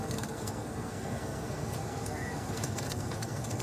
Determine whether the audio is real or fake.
fake